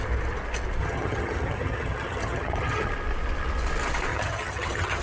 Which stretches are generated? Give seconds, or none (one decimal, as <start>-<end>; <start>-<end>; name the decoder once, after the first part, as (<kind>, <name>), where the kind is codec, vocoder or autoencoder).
0.8-2.9 (vocoder, HiFi-GAN); 4.1-5.0